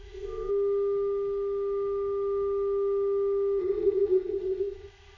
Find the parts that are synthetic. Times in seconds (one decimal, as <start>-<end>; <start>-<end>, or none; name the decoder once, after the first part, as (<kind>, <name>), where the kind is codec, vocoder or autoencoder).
0.0-0.5 (codec, ZipCodec); 3.6-5.2